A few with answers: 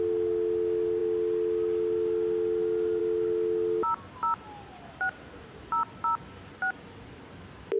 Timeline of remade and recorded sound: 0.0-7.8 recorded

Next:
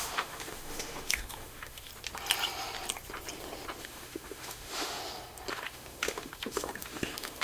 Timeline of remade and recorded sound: 0.0-1.9 remade; 1.9-3.8 recorded; 3.8-5.0 remade; 5.0-5.5 recorded; 5.5-7.4 remade

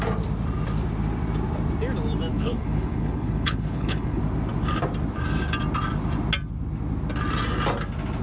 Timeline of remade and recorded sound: 0.0-2.3 recorded; 2.3-4.2 remade; 4.2-8.2 recorded

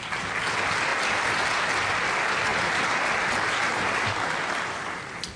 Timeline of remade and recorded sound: 0.0-5.4 recorded

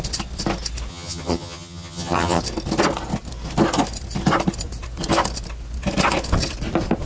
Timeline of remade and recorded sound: 0.0-0.9 recorded; 0.9-2.4 remade; 2.4-7.1 recorded

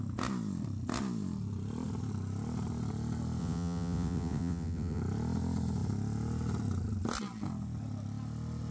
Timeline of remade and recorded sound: 0.0-3.4 recorded; 3.4-5.0 remade; 5.0-8.7 recorded

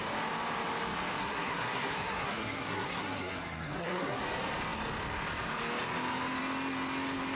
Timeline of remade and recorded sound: 0.0-1.2 recorded; 1.2-4.2 remade; 4.2-7.3 recorded

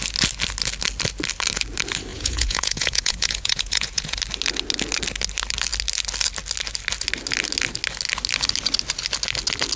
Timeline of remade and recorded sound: 0.0-2.1 recorded; 2.1-4.2 remade; 4.2-9.8 recorded